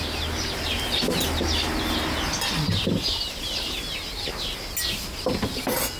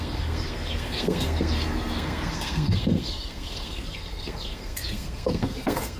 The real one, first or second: first